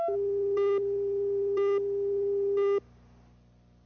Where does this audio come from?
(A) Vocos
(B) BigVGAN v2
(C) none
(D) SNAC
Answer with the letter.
C